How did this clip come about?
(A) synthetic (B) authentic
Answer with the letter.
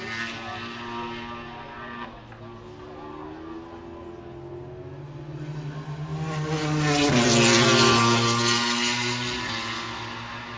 B